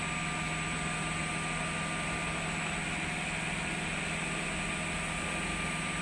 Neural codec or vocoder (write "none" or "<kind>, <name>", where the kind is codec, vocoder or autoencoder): none